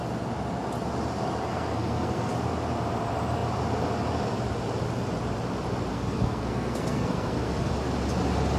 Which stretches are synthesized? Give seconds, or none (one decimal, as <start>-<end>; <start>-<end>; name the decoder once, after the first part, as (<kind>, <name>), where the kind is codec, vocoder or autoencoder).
1.5-2.3 (codec, SNAC); 5.9-7.7